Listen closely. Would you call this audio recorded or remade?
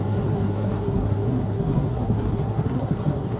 remade